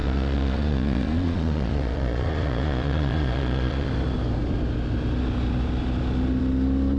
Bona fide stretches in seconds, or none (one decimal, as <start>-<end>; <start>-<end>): 3.9-7.0